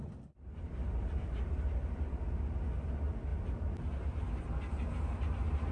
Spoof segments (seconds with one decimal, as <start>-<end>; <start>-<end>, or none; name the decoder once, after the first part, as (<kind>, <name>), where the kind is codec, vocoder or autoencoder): none